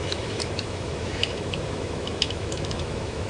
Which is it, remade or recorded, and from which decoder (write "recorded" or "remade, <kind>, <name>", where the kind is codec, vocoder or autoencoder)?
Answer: remade, autoencoder, DAC-VAE